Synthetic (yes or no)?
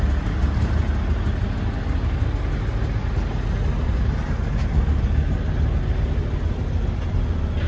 no